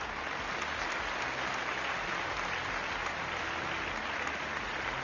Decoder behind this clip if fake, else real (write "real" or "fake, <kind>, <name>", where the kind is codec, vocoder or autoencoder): real